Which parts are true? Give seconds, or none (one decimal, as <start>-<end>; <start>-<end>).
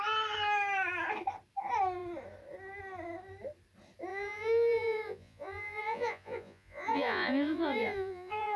0.0-4.1